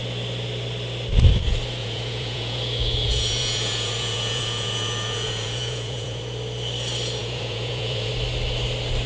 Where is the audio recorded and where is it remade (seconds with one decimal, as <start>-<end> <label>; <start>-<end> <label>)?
0.0-1.8 recorded; 1.8-6.2 remade; 6.2-7.2 recorded; 7.2-8.1 remade; 8.1-9.1 recorded